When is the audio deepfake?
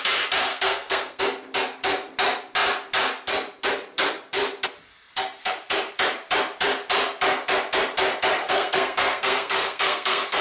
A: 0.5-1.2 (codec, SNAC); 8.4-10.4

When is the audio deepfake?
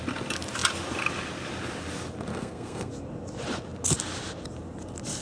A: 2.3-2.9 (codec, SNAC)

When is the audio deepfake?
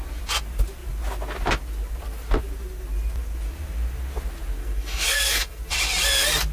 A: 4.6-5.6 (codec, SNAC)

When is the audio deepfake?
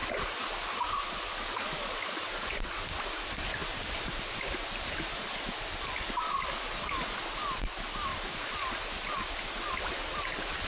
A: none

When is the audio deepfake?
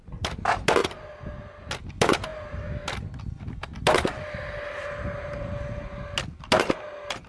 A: none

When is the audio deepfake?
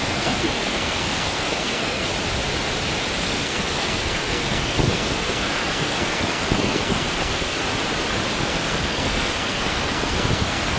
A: 0.0-2.1 (codec, SNAC); 3.2-7.6; 8.4-10.8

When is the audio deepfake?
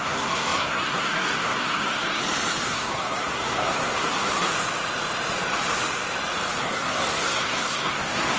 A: 0.0-2.2 (codec, SNAC); 2.7-4.5; 6.6-8.4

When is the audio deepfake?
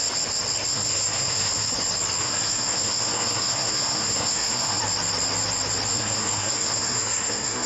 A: 0.7-1.7 (codec, SNAC); 2.2-4.8; 5.9-7.7